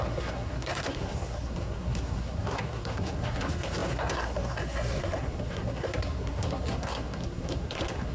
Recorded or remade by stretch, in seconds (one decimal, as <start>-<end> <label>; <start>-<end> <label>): 0.0-8.1 remade